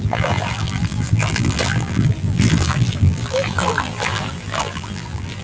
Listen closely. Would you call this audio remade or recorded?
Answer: remade